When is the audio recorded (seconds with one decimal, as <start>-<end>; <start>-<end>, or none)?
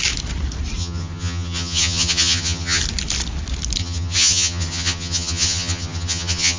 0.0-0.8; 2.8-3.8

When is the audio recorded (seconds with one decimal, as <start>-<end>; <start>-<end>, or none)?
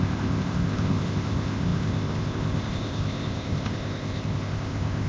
none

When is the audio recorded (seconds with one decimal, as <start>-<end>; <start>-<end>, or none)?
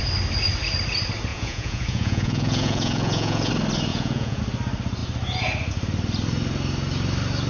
0.0-1.3; 3.5-3.9; 4.4-7.5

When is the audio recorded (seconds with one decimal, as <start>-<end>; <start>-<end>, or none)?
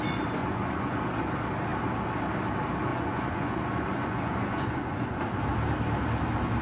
0.0-0.4; 1.0-2.9; 5.2-6.6